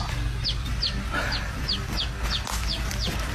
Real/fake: real